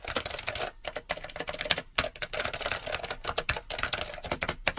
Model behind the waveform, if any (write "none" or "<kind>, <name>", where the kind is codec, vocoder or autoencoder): none